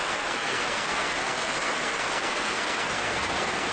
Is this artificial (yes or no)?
yes